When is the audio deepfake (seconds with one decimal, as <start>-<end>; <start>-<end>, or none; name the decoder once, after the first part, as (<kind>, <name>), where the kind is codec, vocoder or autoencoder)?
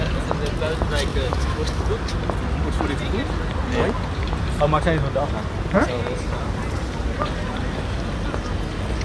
1.1-1.8 (autoencoder, DAC-VAE)